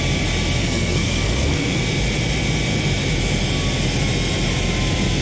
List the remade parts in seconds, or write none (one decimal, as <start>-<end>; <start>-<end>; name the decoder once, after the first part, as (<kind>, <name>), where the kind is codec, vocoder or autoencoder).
0.6-1.8 (codec, SNAC)